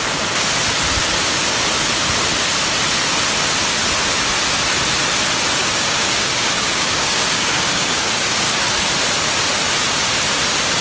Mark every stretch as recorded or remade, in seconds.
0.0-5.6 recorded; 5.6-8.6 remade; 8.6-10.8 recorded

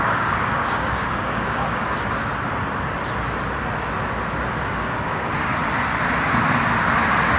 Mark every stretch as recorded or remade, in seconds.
0.0-2.3 remade; 2.3-4.7 recorded; 4.7-5.6 remade; 5.6-7.4 recorded

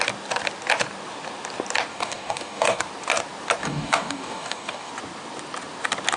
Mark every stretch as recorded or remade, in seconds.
0.0-1.9 recorded; 1.9-2.8 remade; 2.8-3.6 recorded; 3.6-4.9 remade; 4.9-6.2 recorded

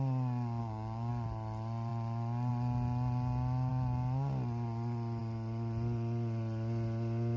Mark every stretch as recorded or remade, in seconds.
0.0-0.6 recorded; 0.6-1.1 remade; 1.1-7.4 recorded

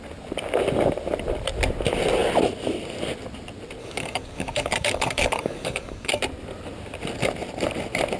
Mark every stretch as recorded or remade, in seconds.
0.0-3.8 recorded; 3.8-6.2 remade; 6.2-8.2 recorded

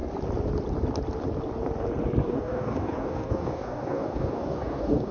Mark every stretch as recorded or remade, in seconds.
0.0-2.2 recorded; 2.2-5.1 remade

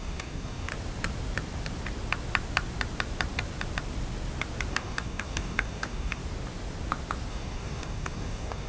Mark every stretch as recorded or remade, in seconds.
0.0-0.7 remade; 0.7-4.7 recorded; 4.7-6.2 remade; 6.2-7.3 recorded; 7.3-8.7 remade

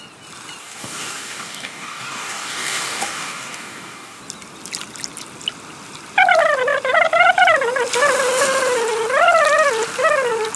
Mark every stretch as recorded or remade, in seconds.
0.0-0.6 recorded; 0.6-4.2 remade; 4.2-10.6 recorded